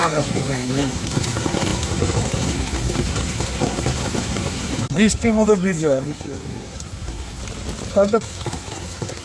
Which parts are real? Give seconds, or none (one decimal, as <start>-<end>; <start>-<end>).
7.4-7.9